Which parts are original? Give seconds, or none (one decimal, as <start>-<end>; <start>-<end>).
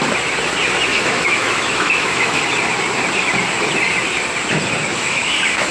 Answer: 0.0-0.9; 2.4-4.9